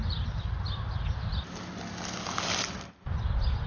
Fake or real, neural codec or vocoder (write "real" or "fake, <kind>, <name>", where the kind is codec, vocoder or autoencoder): real